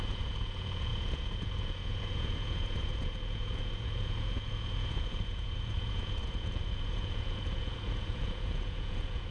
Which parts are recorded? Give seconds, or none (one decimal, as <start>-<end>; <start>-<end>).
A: none